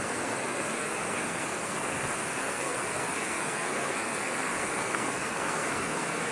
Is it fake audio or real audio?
fake